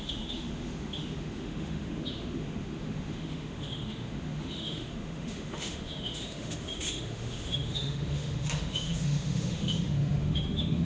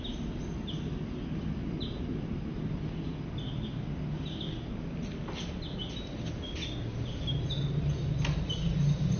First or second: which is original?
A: second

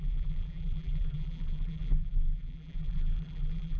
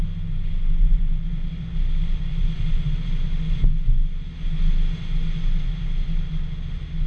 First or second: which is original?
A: second